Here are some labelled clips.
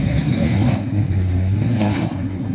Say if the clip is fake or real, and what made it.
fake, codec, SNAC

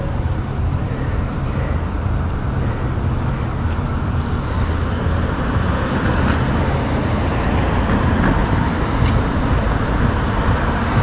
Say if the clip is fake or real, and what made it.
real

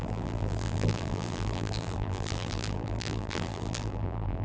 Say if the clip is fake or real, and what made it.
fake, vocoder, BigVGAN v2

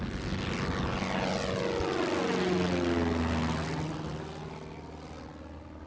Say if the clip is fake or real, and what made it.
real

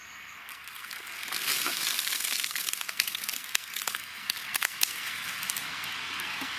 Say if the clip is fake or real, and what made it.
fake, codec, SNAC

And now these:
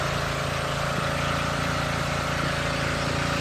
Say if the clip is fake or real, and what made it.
real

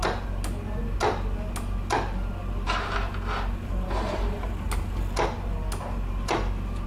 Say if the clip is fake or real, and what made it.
real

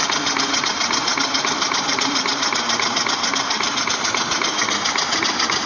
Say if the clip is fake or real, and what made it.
fake, vocoder, BigVGAN v2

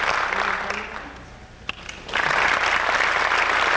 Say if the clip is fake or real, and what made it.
real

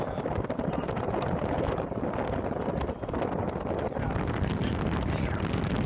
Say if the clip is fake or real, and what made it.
real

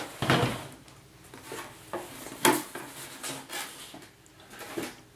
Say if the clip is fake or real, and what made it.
real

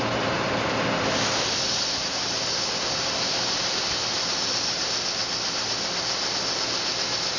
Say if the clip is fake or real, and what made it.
real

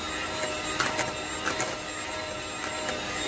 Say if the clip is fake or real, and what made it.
real